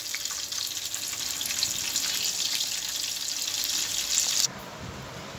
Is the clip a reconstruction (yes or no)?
no